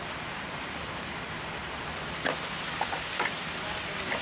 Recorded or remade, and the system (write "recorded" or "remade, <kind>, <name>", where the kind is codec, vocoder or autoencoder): recorded